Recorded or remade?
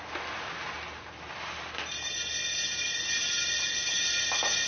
recorded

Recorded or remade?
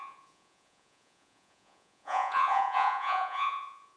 remade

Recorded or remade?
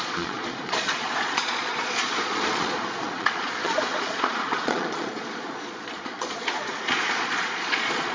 remade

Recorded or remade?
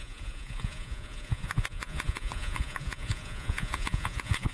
remade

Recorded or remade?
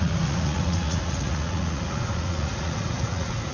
remade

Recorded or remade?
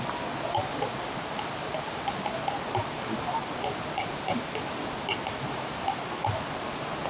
recorded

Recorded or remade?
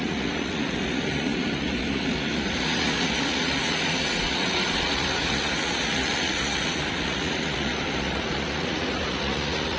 remade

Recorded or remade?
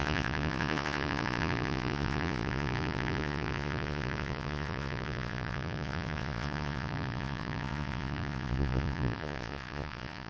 remade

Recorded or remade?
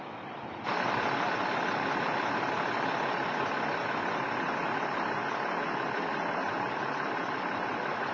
recorded